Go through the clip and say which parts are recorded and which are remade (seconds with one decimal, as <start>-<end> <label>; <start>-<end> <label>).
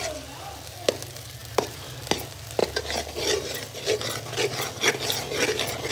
0.0-1.4 recorded; 1.4-1.9 remade; 1.9-5.9 recorded